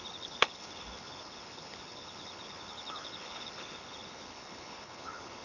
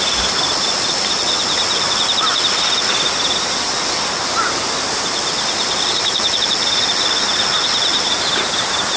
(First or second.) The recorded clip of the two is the second